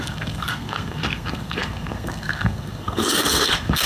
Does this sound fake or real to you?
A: fake